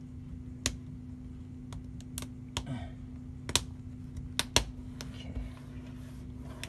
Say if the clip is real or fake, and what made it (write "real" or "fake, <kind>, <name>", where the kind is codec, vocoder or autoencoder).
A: real